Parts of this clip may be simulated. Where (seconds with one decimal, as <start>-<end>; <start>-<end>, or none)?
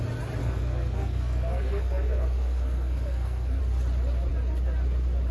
0.4-3.6